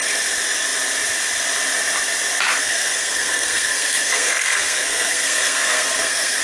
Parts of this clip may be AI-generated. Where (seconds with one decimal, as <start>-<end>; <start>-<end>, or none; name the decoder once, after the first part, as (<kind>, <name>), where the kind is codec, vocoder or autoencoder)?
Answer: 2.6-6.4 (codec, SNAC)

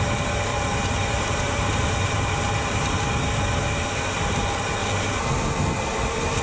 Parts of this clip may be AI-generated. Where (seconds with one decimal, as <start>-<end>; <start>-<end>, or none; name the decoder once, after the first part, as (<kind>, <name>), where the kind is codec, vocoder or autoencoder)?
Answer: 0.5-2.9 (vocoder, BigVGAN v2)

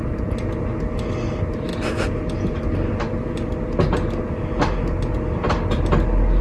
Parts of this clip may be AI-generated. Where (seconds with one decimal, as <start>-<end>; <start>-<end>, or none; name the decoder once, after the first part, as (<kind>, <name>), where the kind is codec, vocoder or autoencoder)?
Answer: none

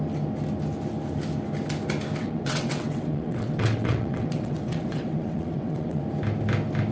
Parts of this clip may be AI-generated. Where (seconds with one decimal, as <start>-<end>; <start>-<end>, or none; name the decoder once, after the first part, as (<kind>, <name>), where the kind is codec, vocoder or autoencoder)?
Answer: 2.2-6.0 (vocoder, WaveNeXt)

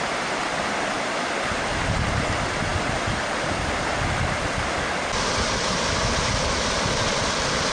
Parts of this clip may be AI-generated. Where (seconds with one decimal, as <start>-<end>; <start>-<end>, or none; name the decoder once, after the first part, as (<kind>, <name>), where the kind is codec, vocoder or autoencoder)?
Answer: none

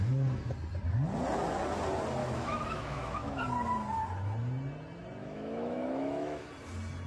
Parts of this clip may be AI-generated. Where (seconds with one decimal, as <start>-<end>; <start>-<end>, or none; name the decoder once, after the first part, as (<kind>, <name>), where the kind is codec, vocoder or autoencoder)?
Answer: 2.2-3.4 (autoencoder, DAC-VAE); 5.2-6.5

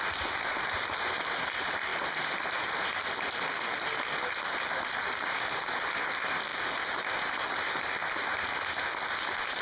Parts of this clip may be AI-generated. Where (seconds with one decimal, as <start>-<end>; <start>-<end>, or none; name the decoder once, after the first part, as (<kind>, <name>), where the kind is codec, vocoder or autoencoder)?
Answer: 8.0-8.7 (vocoder, BigVGAN v2)